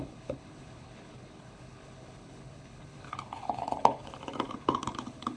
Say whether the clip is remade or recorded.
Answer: remade